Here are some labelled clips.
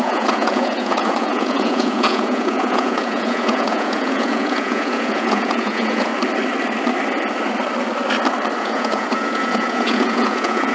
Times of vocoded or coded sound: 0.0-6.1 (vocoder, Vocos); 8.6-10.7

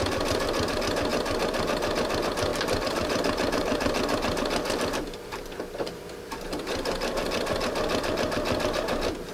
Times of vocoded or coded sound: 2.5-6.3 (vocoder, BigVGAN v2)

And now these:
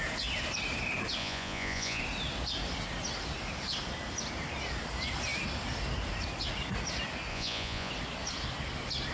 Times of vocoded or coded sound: 1.2-2.0 (vocoder, Vocos); 7.3-7.9